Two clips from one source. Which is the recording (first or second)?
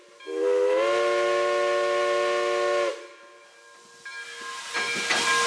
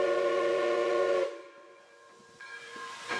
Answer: first